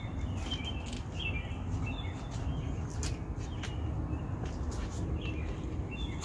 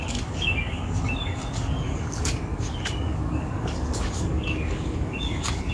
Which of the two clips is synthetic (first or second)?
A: second